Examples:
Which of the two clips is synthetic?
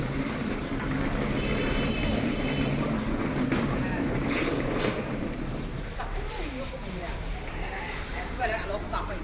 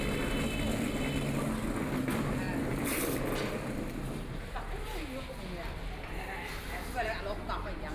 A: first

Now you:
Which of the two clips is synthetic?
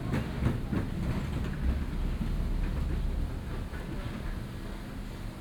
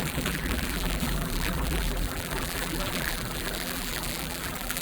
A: second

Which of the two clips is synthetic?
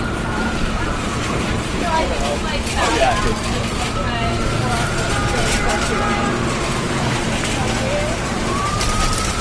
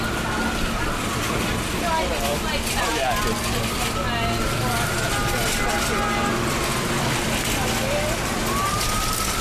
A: first